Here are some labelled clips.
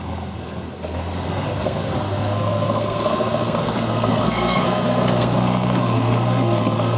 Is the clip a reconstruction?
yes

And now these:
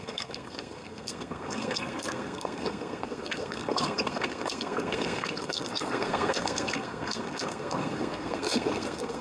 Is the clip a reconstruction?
yes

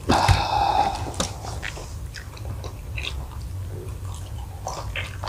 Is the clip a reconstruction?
no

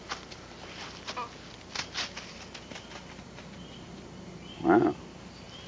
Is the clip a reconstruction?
no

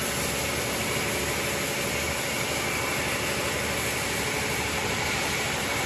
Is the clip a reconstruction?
no